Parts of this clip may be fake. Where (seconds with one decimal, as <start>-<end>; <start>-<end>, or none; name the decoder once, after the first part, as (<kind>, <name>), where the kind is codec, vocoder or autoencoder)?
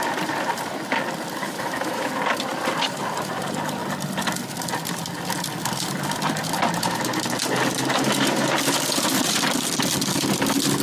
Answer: 1.4-2.1 (autoencoder, DAC-VAE)